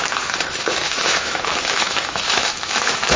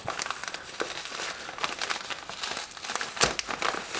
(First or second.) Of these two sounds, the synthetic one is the first